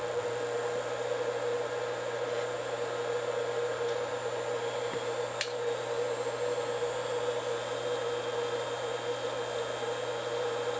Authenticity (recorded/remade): recorded